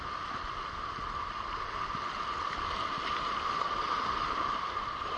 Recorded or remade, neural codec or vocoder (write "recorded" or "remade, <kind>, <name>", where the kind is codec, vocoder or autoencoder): recorded